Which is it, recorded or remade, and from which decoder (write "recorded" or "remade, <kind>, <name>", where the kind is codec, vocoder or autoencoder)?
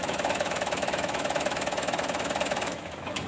remade, autoencoder, DAC-VAE